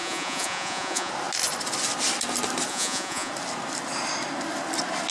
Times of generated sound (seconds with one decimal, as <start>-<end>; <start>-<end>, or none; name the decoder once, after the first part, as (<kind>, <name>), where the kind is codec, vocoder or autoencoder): 0.0-1.1 (vocoder, Vocos); 2.7-3.3